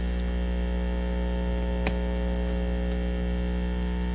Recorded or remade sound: recorded